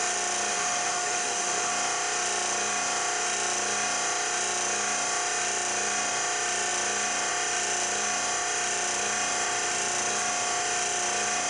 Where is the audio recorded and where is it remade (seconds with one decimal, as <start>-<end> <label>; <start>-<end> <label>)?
0.0-0.5 recorded; 0.5-1.7 remade; 1.7-11.5 recorded